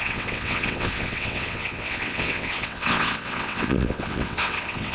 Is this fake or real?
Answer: fake